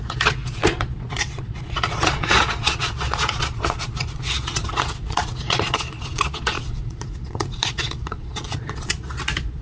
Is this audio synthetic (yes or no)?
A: yes